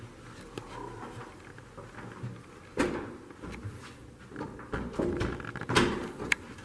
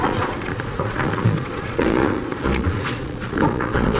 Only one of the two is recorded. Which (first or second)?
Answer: first